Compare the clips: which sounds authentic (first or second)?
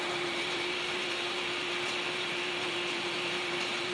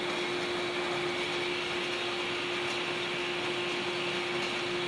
second